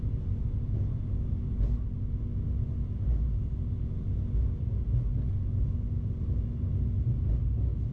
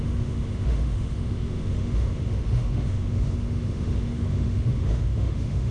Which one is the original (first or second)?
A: first